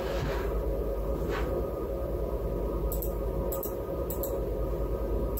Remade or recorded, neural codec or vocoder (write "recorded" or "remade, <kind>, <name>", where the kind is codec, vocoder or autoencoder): recorded